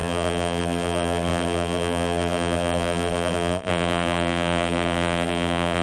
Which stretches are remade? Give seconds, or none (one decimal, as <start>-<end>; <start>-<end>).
0.0-5.8

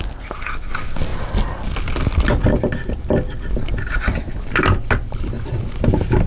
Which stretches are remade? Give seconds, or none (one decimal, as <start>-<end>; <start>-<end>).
none

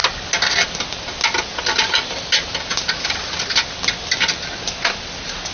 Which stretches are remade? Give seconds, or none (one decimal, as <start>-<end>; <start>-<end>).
none

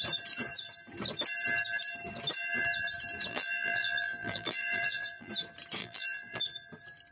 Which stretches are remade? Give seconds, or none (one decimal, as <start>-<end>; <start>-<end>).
3.3-5.3; 5.8-6.4